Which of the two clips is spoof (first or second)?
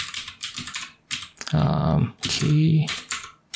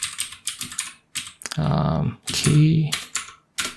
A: first